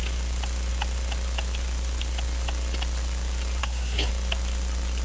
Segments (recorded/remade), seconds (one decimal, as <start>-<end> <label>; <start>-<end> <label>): 0.0-3.6 recorded; 3.6-4.1 remade; 4.1-5.0 recorded

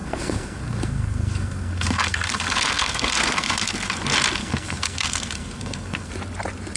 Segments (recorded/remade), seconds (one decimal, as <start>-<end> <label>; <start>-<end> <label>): 0.0-4.0 remade; 4.0-4.4 recorded; 4.4-6.1 remade; 6.1-6.8 recorded